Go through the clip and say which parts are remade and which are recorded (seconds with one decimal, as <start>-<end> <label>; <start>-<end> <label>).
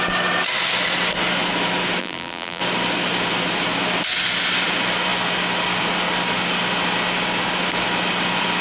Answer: 0.0-2.0 recorded; 2.0-2.6 remade; 2.6-8.6 recorded